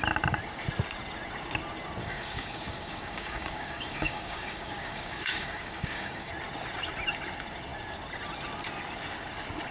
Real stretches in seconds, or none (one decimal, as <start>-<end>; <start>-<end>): 0.0-2.0; 6.3-9.7